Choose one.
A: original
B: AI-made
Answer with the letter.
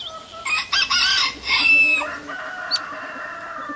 A